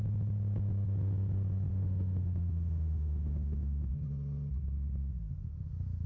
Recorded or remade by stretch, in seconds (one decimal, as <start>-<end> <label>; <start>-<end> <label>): 0.0-1.7 recorded; 1.7-3.9 remade; 3.9-6.1 recorded